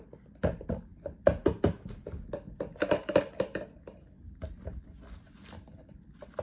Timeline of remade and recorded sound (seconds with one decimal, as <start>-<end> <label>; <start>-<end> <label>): 0.0-6.4 recorded